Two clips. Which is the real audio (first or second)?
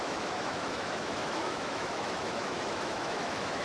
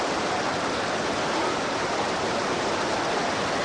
second